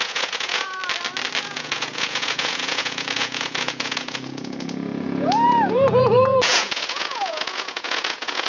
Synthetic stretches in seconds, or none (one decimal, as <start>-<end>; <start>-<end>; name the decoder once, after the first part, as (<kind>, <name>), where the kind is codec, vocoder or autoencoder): 0.0-0.8 (vocoder, Vocos); 1.4-8.5